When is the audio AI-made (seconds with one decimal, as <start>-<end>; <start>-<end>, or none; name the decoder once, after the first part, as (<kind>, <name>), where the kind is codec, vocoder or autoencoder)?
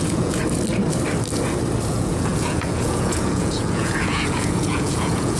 0.0-0.4 (vocoder, Vocos); 1.9-5.4